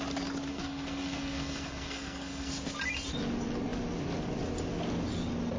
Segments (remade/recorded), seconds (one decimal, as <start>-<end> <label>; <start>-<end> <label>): 0.0-0.5 recorded; 0.5-2.5 remade; 2.5-5.6 recorded